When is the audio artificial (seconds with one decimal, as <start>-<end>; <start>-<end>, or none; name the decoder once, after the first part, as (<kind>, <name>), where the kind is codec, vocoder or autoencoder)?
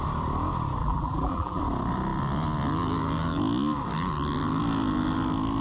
0.8-1.6 (vocoder, BigVGAN v2)